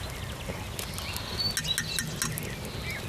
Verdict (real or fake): real